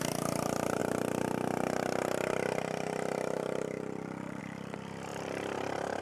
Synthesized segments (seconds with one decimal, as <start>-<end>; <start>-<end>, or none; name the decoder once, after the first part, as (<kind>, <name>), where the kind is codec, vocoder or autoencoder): none